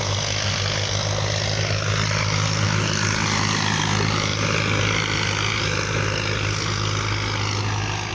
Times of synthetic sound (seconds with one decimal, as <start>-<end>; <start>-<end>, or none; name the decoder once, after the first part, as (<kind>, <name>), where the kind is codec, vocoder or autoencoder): none